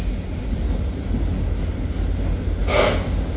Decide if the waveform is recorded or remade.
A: recorded